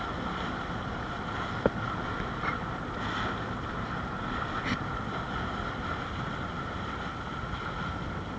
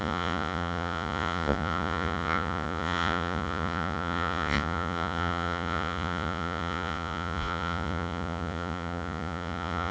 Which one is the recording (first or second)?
first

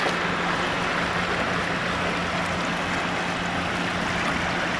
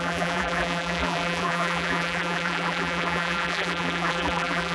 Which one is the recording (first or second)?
first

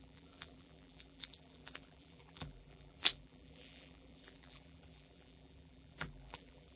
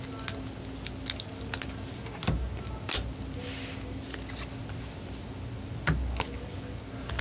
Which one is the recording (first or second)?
second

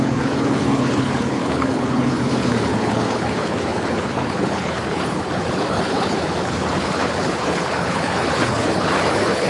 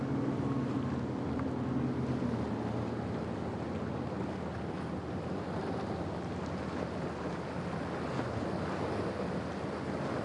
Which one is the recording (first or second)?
second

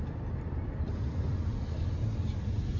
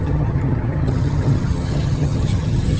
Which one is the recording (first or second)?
first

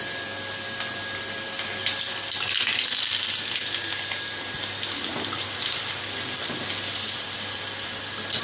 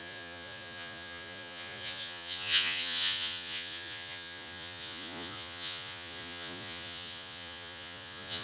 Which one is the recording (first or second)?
first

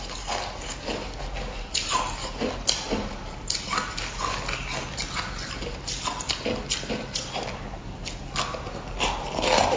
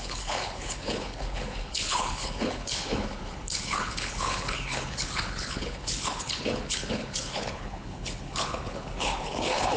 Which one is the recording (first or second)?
first